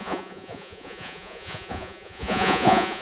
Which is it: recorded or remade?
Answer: remade